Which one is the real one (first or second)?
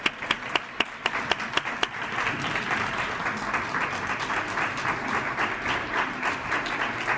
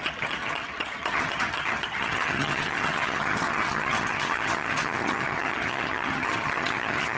first